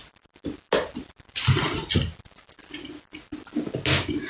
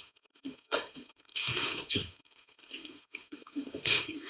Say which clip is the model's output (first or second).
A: second